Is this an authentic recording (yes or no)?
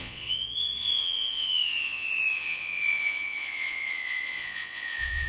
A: no